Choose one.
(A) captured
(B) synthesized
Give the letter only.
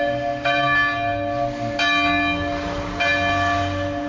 A